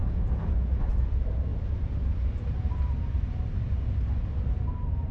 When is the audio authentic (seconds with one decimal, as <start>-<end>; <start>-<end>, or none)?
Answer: 0.5-5.1